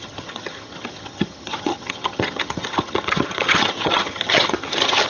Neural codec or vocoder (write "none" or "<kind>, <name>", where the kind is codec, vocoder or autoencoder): vocoder, HiFi-GAN